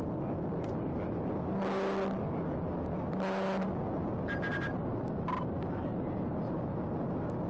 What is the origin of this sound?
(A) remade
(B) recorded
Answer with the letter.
B